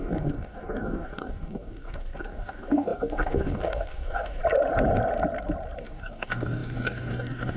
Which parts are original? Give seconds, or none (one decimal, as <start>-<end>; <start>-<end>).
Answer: 4.4-5.8